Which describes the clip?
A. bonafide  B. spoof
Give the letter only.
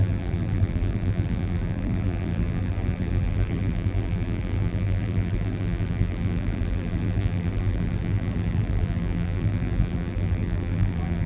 B